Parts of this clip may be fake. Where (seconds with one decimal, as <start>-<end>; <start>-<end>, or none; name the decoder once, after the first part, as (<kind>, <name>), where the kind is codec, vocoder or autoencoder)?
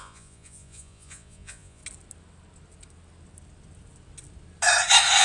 0.0-1.8 (vocoder, Vocos)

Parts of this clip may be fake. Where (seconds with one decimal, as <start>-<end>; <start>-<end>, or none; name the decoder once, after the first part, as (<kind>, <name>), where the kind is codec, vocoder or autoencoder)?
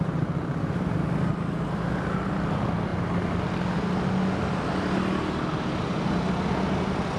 none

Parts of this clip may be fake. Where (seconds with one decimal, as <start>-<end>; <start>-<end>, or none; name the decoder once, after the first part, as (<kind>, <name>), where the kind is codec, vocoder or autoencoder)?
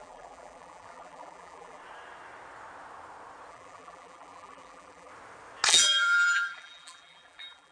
0.0-1.8 (vocoder, BigVGAN v2); 3.5-5.1; 5.7-7.7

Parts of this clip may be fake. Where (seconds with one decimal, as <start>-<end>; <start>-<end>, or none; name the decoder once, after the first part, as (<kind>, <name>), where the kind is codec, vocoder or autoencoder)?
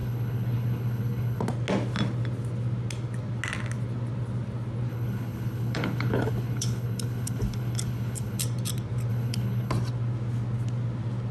0.0-1.4 (codec, HILCodec); 4.9-8.4; 9.1-9.7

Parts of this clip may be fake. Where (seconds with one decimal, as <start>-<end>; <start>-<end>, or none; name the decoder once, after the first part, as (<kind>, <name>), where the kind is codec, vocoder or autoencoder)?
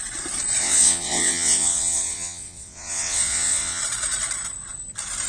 0.6-3.8 (vocoder, WaveNeXt)